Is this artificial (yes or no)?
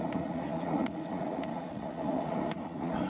yes